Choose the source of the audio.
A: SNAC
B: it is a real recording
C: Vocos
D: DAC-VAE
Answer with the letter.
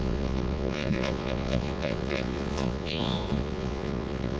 C